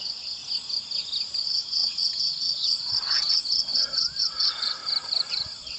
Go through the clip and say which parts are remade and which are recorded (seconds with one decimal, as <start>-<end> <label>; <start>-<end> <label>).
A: 0.0-0.4 remade; 0.4-1.4 recorded; 1.4-4.8 remade; 4.8-5.3 recorded; 5.3-5.8 remade